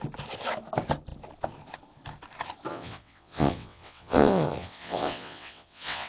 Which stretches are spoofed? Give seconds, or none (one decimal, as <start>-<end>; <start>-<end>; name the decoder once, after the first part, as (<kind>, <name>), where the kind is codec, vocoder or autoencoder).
2.7-6.1 (vocoder, WaveNeXt)